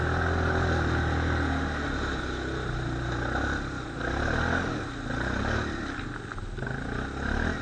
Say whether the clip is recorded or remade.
recorded